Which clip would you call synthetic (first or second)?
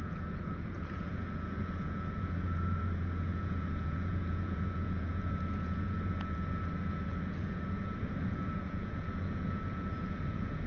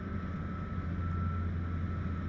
first